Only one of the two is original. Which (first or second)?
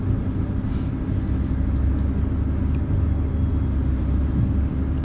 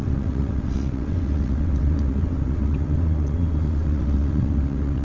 first